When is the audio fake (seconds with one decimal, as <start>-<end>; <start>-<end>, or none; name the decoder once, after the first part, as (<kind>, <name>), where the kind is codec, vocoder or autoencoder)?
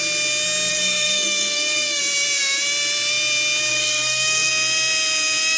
0.7-2.0 (codec, SNAC); 3.7-4.5